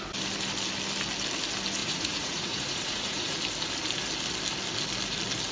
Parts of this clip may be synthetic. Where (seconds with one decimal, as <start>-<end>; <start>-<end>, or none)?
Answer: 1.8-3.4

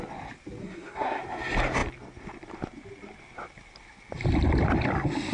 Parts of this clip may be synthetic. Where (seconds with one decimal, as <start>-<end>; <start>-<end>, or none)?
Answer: 0.6-1.2

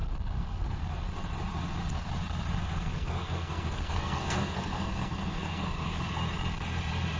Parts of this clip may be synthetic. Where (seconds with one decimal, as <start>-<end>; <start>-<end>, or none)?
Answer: 0.0-0.8; 2.6-6.0